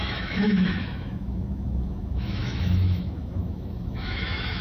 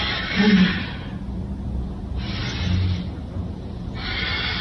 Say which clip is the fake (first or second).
first